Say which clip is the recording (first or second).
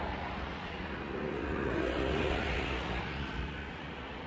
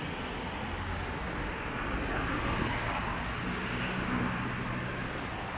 second